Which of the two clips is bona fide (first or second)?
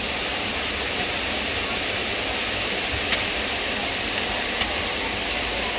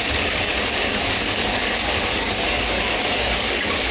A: first